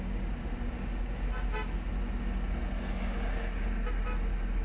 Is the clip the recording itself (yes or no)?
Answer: yes